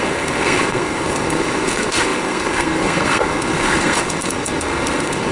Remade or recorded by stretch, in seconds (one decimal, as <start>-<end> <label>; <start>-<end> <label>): 0.0-5.3 remade